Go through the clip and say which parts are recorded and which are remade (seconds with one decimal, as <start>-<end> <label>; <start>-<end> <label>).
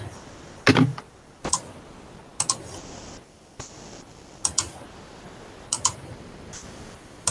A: 0.0-7.3 recorded